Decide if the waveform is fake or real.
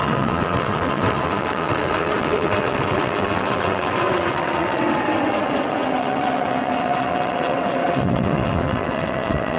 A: fake